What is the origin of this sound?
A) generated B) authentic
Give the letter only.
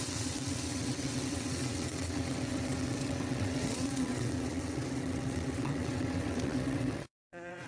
A